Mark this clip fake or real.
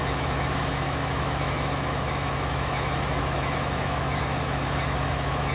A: fake